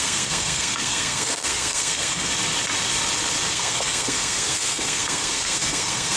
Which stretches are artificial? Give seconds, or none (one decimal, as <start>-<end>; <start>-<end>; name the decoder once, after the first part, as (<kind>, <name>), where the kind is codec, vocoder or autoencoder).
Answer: 0.0-2.3 (codec, SNAC); 3.5-6.2